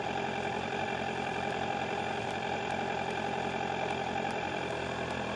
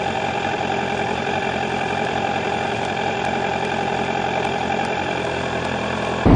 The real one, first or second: first